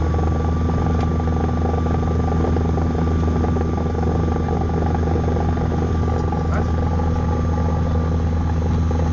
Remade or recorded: recorded